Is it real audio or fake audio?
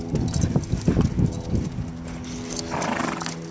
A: real